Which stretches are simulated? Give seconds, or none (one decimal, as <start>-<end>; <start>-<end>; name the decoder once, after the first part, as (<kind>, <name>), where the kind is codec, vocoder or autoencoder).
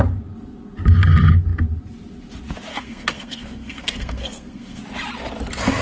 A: 2.7-4.8 (codec, SNAC)